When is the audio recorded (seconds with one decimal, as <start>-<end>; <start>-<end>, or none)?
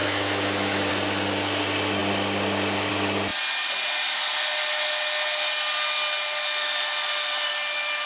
0.9-8.1